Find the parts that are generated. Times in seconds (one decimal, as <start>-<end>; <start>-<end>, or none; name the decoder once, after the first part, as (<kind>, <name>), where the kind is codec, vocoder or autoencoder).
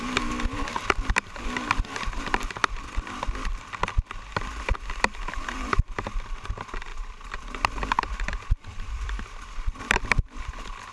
6.9-10.9 (vocoder, BigVGAN v2)